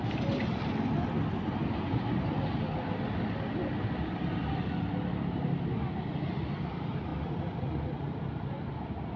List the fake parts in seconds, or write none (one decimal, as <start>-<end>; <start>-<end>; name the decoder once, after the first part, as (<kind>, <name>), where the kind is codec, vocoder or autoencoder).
none